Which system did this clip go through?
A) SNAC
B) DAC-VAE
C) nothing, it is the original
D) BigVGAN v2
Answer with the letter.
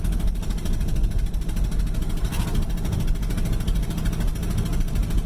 C